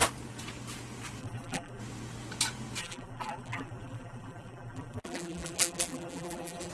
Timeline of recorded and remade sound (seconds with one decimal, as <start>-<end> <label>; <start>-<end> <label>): 0.0-1.2 recorded; 1.2-1.8 remade; 1.8-2.8 recorded; 2.8-6.7 remade